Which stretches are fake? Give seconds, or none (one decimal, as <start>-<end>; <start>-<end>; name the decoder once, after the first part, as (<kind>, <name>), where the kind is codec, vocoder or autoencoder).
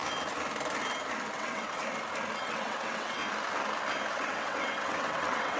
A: 1.3-1.8 (vocoder, WaveNeXt); 2.4-3.2; 4.1-5.6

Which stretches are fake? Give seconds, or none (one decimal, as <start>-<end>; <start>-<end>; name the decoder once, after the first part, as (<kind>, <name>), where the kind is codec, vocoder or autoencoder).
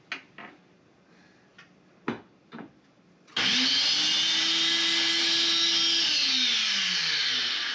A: none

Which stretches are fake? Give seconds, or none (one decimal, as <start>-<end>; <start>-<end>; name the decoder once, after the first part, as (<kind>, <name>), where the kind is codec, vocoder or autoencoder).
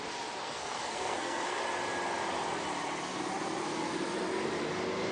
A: 0.4-1.6 (codec, SNAC)